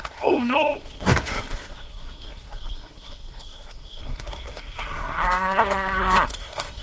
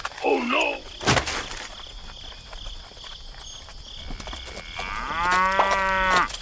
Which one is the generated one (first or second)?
first